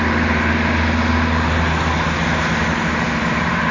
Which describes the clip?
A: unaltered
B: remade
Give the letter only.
A